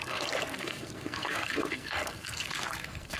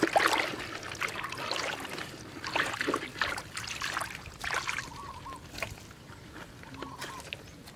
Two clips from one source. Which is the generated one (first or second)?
first